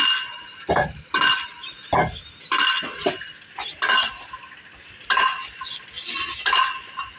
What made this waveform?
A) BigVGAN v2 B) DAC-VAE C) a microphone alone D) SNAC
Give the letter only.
C